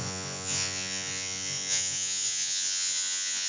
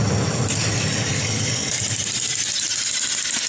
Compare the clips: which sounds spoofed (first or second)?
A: first